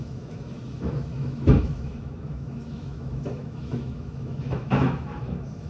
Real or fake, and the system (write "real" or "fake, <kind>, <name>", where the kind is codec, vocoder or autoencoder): fake, autoencoder, DAC-VAE